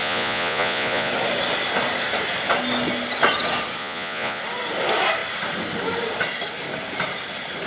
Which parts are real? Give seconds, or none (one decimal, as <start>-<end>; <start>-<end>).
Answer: 1.1-3.8; 4.4-7.7